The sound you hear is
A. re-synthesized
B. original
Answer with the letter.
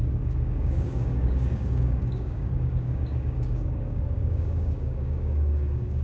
A